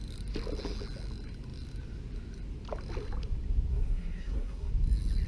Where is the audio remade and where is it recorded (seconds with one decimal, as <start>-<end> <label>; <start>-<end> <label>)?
0.0-3.7 recorded; 3.7-4.7 remade; 4.7-5.3 recorded